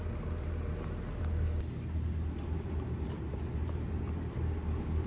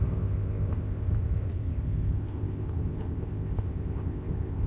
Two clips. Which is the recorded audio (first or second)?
first